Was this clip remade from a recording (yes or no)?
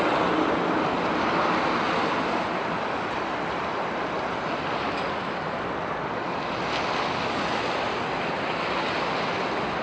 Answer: no